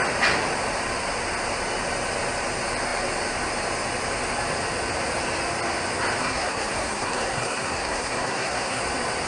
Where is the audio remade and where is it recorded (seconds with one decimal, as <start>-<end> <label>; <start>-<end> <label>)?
0.0-6.2 recorded; 6.2-8.8 remade; 8.8-9.3 recorded